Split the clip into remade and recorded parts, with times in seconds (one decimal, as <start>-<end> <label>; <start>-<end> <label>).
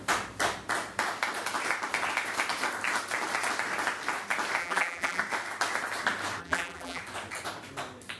0.0-4.6 recorded; 4.6-5.2 remade; 5.2-6.4 recorded; 6.4-7.0 remade; 7.0-8.2 recorded